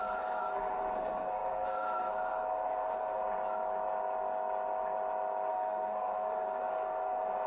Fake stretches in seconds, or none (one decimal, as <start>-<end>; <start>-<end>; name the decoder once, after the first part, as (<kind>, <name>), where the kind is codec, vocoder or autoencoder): 0.0-3.2 (codec, SNAC); 5.5-7.5